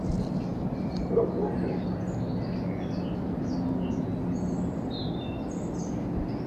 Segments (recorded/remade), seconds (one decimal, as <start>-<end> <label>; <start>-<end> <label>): 0.0-6.5 recorded